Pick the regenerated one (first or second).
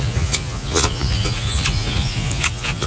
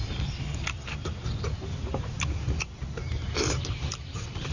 first